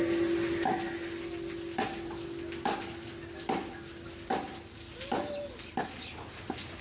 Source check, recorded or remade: recorded